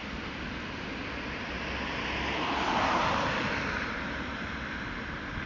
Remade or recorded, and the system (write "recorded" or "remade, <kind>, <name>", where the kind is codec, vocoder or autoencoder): remade, vocoder, BigVGAN v2